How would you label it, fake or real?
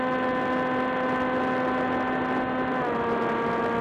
real